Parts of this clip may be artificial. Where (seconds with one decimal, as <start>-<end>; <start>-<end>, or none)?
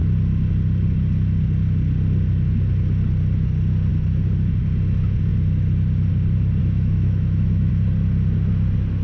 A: 6.6-7.7